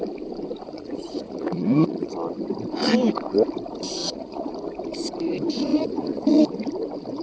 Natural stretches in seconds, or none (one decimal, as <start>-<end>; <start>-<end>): 0.0-0.6; 2.1-4.0; 4.5-5.7; 6.4-7.2